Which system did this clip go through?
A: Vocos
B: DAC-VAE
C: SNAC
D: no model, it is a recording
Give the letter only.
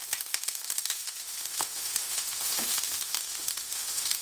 B